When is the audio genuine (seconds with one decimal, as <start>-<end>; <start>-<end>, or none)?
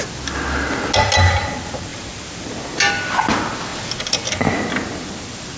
0.0-1.9; 2.5-5.6